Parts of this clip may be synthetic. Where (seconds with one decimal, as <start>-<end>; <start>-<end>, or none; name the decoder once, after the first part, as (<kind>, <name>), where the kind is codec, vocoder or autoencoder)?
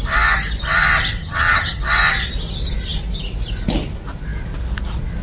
1.2-1.8 (vocoder, HiFi-GAN)